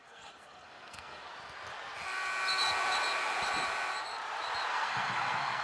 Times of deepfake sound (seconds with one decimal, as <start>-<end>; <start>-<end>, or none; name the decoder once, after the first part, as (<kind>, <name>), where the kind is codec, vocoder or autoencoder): 0.0-1.3 (codec, SNAC); 4.7-5.6